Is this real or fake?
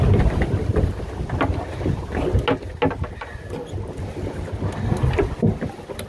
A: real